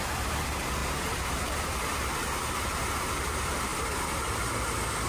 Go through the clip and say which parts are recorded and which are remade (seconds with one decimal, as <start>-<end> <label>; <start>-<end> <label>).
0.0-0.8 recorded; 0.8-1.6 remade; 1.6-5.1 recorded